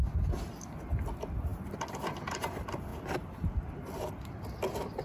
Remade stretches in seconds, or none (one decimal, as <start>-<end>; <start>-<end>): none